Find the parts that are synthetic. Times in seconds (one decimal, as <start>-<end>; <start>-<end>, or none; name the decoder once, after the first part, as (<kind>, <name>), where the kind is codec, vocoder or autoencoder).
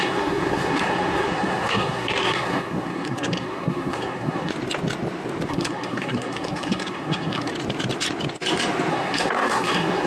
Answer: 0.0-4.5 (codec, SNAC); 5.5-7.5; 8.9-10.1